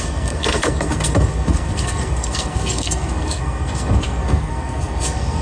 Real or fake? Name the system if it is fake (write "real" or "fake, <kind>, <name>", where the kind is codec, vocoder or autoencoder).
fake, codec, SNAC